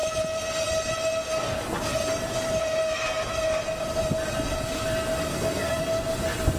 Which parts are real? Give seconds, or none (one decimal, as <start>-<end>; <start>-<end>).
0.0-5.3; 5.8-6.6

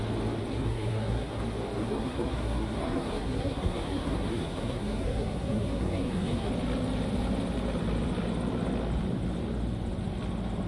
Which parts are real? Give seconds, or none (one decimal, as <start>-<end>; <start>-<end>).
0.0-0.5; 1.4-1.8; 6.5-10.7